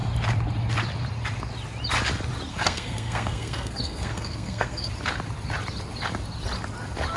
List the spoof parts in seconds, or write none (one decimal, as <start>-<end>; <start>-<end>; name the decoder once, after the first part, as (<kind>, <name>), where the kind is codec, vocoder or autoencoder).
2.5-4.9 (codec, SNAC)